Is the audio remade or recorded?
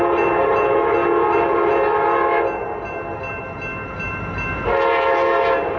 recorded